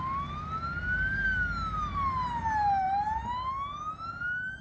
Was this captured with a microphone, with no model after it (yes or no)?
yes